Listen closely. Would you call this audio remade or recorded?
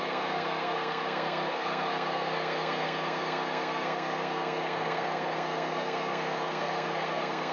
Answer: remade